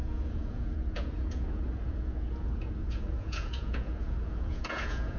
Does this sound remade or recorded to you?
remade